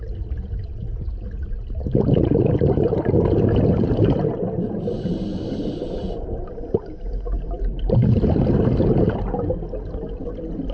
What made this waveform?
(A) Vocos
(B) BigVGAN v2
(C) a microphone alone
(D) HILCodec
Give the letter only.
C